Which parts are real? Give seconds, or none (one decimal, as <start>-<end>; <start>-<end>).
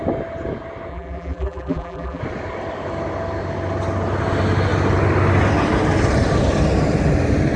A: 0.0-0.9; 2.2-7.6